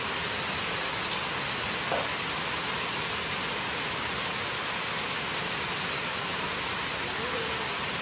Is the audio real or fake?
real